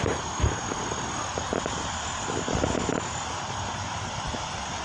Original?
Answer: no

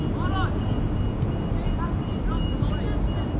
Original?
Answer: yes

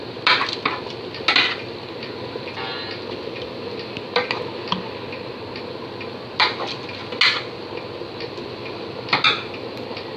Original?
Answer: yes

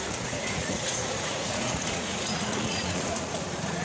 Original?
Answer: no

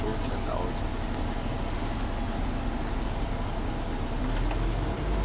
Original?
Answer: yes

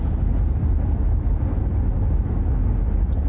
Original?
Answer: yes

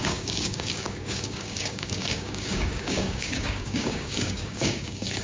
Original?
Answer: no